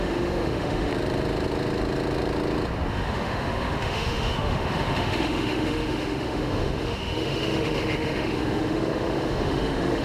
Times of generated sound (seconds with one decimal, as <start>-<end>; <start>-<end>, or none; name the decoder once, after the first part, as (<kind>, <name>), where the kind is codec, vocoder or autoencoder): 0.0-0.9 (autoencoder, DAC-VAE); 2.9-10.0